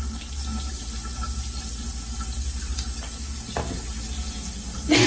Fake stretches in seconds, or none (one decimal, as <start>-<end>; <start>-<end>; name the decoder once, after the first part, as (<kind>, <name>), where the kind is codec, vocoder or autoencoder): none